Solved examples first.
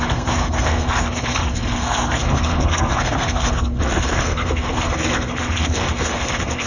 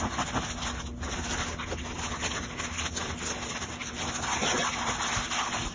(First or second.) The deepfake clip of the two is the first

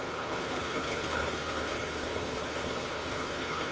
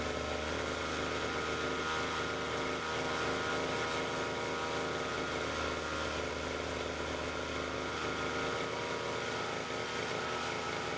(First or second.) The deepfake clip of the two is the first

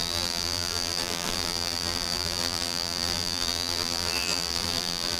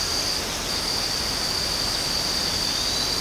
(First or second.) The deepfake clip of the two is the first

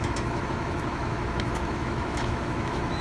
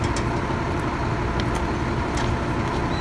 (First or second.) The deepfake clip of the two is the first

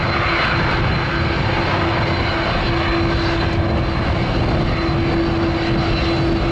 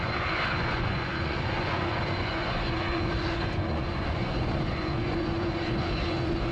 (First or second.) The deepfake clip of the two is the second